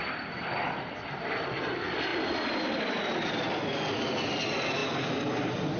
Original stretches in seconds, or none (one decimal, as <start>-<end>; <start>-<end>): 0.0-5.8